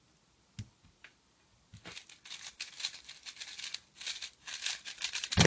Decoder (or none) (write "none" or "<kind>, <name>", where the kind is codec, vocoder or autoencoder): none